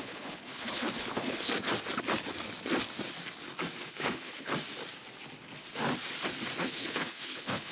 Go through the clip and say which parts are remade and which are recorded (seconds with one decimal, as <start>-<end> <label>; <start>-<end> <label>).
0.0-1.5 remade; 1.5-3.8 recorded; 3.8-4.5 remade; 4.5-6.6 recorded; 6.6-7.7 remade